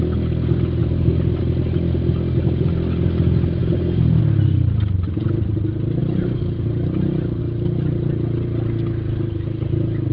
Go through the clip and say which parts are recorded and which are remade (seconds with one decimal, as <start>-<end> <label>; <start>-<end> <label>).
0.0-0.8 recorded; 0.8-1.4 remade; 1.4-3.6 recorded; 3.6-4.2 remade; 4.2-6.0 recorded; 6.0-7.4 remade; 7.4-10.1 recorded